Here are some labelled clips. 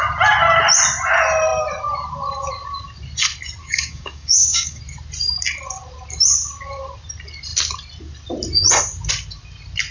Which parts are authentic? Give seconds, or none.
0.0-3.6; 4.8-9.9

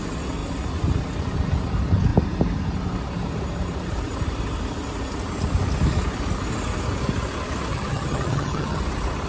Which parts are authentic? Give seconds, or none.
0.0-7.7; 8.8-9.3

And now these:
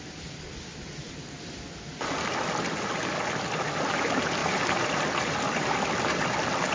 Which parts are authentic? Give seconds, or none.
0.7-3.6

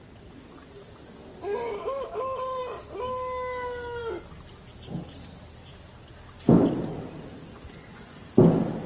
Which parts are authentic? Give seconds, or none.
0.0-7.4; 8.3-8.9

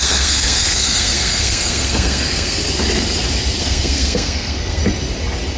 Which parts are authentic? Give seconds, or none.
2.6-3.6; 4.8-5.6

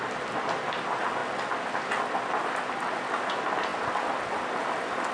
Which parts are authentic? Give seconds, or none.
0.0-5.1

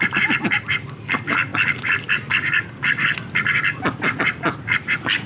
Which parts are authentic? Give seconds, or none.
0.0-5.3